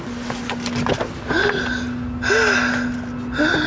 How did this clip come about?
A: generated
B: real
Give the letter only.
B